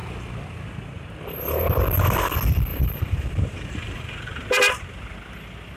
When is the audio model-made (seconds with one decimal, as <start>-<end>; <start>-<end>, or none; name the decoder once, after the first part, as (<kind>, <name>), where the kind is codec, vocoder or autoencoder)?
2.7-4.6 (vocoder, BigVGAN v2)